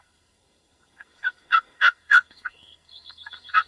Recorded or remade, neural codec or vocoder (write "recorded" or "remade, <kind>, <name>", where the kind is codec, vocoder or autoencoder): remade, codec, SNAC